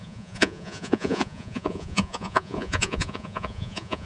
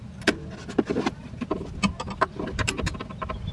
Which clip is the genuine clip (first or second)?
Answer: second